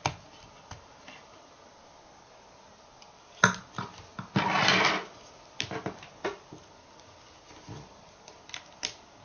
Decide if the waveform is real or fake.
real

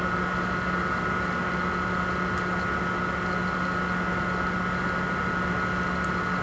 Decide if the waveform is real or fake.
real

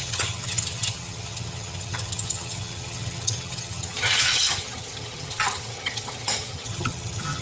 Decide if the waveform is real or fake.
fake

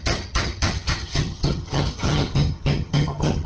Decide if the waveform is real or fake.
fake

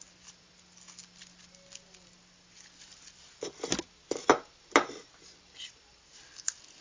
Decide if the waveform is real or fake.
real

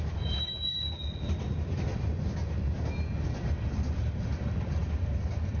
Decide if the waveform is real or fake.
real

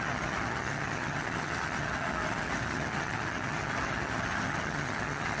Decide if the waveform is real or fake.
fake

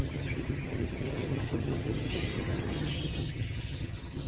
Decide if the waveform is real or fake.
fake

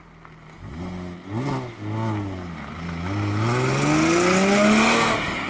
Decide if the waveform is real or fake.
real